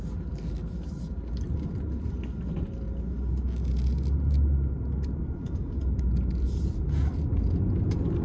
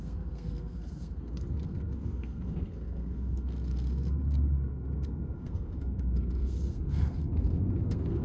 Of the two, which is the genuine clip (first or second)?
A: first